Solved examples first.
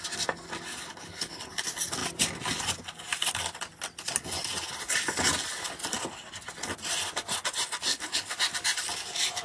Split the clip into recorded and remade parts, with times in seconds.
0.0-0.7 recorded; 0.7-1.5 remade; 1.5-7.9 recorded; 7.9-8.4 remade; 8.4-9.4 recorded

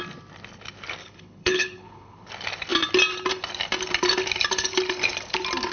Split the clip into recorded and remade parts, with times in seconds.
0.0-1.0 recorded; 1.0-2.3 remade; 2.3-5.7 recorded

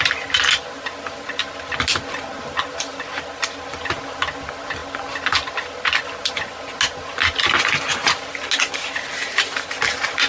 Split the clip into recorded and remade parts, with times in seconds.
0.0-10.3 recorded